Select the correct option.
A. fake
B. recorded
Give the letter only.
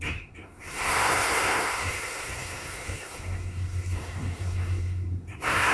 A